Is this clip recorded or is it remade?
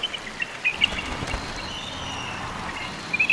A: recorded